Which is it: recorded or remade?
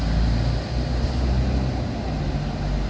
recorded